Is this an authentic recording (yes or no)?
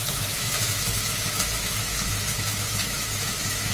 no